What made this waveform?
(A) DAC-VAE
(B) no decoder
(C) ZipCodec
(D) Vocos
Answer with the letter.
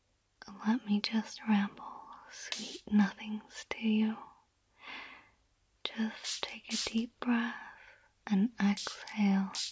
B